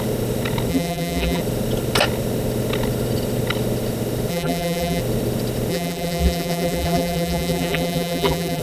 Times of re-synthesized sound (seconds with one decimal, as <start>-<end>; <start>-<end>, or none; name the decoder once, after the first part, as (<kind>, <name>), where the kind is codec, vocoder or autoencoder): 0.7-1.4 (vocoder, BigVGAN v2); 4.3-5.0; 5.7-8.6